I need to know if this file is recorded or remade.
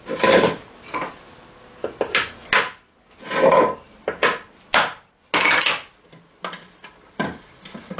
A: recorded